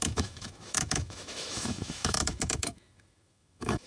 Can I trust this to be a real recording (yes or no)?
no